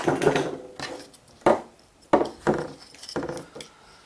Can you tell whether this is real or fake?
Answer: real